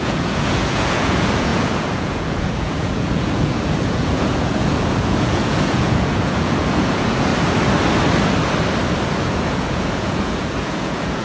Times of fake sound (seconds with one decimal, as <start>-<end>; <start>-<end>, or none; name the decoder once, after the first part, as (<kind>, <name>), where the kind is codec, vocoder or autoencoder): 0.0-7.3 (vocoder, Vocos); 9.2-11.2